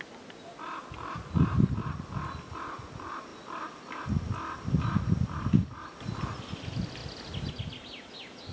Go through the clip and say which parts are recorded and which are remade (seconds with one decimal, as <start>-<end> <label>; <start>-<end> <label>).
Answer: 0.0-8.5 recorded